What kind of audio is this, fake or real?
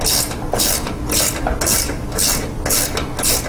real